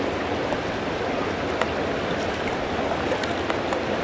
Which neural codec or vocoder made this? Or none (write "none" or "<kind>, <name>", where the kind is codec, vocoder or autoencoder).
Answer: none